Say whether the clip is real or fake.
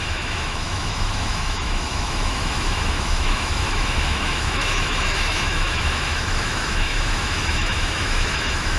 fake